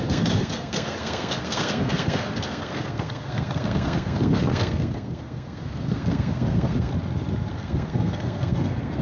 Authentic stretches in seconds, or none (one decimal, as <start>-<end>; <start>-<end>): 6.9-7.5

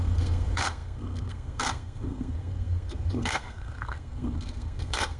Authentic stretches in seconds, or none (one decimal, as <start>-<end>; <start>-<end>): none

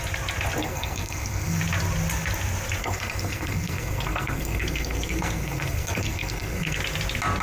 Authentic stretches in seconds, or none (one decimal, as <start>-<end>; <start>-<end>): 0.0-0.6; 1.6-2.8; 6.8-7.4

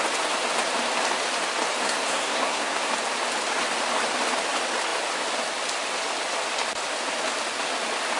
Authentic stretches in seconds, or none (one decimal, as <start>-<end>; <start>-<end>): 0.0-1.8; 2.9-8.2

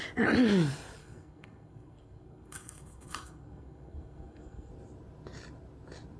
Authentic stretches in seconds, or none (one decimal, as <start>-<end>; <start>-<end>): 0.0-1.0; 4.7-6.2

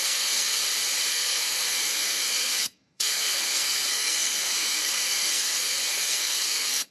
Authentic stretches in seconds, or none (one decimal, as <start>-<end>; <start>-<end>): 0.6-1.1